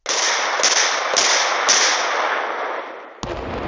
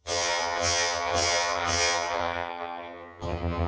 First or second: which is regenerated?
second